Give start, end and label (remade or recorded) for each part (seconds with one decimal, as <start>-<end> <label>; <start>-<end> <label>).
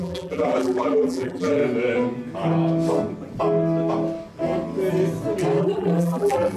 0.0-1.6 remade; 1.6-5.6 recorded; 5.6-6.6 remade